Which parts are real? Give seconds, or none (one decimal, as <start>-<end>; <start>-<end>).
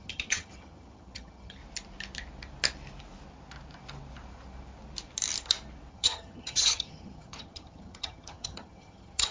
1.6-5.9